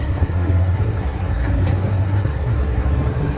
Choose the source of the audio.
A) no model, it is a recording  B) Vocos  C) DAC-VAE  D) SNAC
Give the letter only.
D